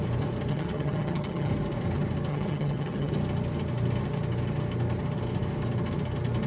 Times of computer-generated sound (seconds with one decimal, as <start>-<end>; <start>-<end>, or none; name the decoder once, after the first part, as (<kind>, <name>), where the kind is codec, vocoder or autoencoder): 0.5-1.5 (vocoder, HiFi-GAN); 2.3-3.1